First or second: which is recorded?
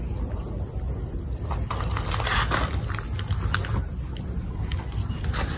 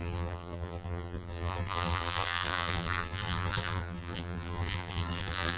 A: first